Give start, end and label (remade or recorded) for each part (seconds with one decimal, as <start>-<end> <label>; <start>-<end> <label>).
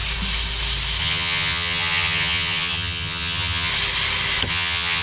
0.0-1.0 recorded; 1.0-3.7 remade; 3.7-4.5 recorded; 4.5-5.0 remade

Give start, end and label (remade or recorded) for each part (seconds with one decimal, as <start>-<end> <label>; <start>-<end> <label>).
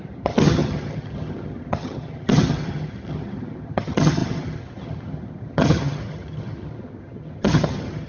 0.0-8.1 remade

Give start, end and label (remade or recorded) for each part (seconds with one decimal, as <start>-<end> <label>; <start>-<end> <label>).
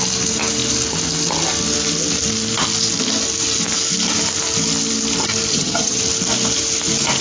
0.0-5.5 recorded; 5.5-6.0 remade; 6.0-7.2 recorded